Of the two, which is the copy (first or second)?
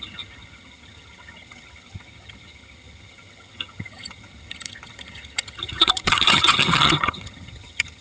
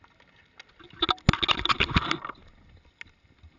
first